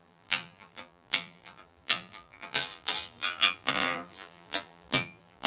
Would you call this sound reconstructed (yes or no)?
yes